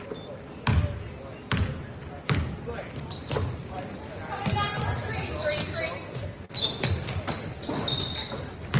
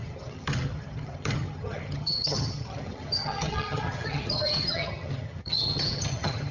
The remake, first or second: second